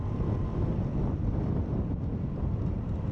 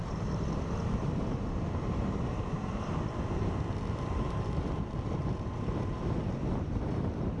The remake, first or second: second